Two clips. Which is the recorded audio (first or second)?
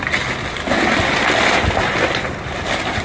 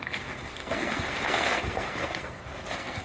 first